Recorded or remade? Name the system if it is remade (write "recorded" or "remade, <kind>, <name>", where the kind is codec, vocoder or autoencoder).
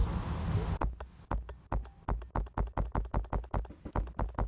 recorded